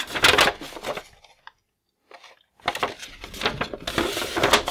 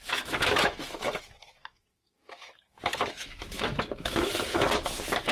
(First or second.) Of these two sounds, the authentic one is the first